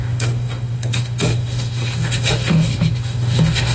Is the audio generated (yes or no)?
yes